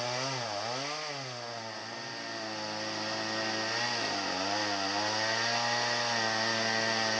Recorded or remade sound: recorded